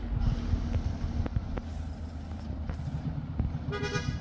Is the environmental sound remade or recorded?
recorded